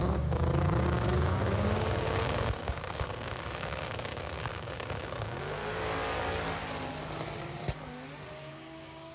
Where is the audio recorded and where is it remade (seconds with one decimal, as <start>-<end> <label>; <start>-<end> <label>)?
0.0-5.6 remade; 5.6-8.5 recorded; 8.5-9.1 remade